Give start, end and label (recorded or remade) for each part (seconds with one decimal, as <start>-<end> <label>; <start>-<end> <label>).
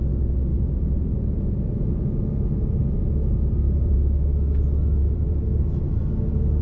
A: 0.0-0.5 recorded; 0.5-4.0 remade; 4.0-5.0 recorded; 5.0-5.6 remade; 5.6-6.6 recorded